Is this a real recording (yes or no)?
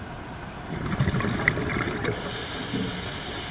yes